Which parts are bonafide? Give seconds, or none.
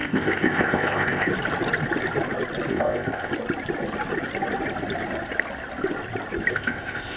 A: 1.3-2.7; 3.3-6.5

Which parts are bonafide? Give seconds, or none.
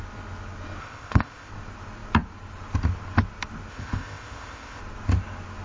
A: 0.0-0.8; 1.5-3.7; 4.8-5.6